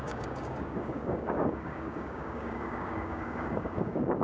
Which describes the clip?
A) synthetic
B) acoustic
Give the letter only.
A